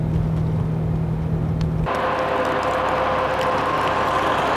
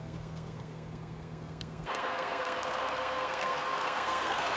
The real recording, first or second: first